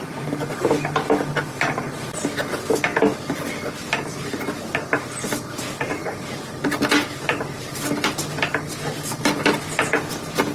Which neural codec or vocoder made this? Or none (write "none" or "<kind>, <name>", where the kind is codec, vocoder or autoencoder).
none